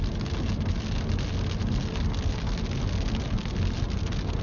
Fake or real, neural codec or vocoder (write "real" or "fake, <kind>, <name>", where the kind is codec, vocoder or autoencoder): real